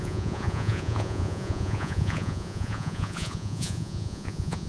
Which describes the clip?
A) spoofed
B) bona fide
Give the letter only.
A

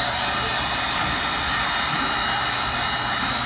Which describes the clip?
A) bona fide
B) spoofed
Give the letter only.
A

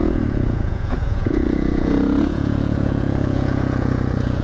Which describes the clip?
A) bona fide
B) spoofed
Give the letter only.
B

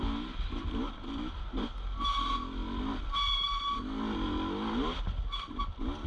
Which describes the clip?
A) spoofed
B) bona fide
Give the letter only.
B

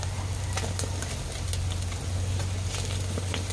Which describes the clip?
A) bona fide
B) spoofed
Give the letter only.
A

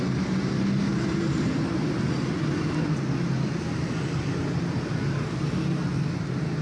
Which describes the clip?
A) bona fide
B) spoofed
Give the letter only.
A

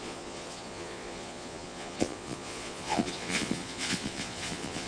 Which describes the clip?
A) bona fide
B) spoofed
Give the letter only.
B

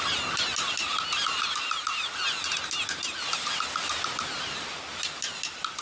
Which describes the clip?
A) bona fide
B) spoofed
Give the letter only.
A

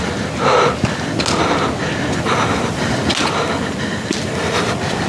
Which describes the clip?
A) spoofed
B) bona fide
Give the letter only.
B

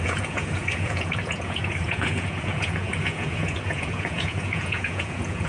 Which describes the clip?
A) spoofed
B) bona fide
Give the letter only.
A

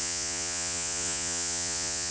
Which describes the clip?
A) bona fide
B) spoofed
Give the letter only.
B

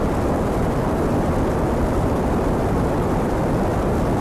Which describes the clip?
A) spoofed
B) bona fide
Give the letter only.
B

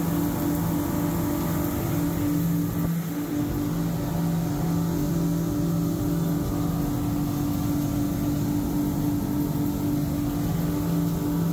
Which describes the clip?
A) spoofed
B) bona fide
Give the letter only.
B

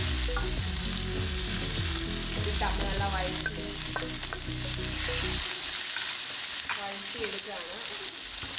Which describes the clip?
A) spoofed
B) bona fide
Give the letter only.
B